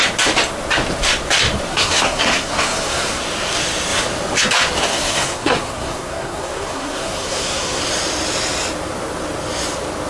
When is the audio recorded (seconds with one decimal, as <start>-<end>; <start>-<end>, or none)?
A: 0.0-1.7; 3.2-4.9; 7.8-10.1